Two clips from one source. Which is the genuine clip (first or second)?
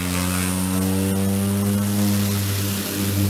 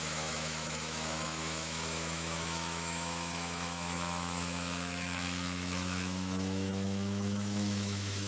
first